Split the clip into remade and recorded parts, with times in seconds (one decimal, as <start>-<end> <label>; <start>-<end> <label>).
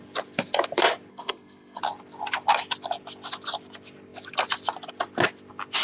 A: 0.0-1.1 recorded; 1.1-1.8 remade; 1.8-5.8 recorded